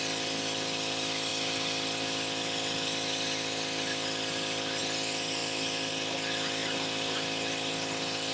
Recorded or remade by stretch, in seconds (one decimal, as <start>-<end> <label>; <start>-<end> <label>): 0.0-1.3 recorded; 1.3-4.8 remade; 4.8-5.4 recorded; 5.4-5.9 remade; 5.9-6.6 recorded; 6.6-7.5 remade; 7.5-8.3 recorded